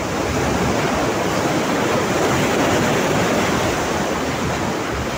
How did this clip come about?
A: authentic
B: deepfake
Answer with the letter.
A